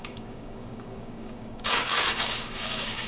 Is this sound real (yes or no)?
no